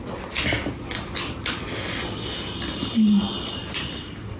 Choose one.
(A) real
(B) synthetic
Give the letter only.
A